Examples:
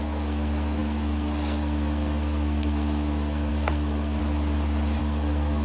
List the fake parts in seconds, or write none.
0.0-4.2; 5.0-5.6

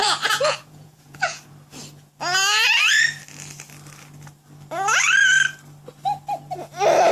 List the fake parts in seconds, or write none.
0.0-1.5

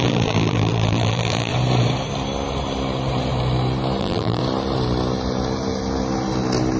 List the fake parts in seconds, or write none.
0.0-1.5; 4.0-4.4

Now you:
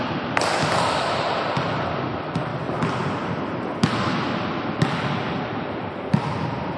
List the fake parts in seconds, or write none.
0.0-2.5